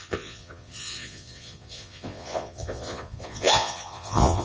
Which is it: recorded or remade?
remade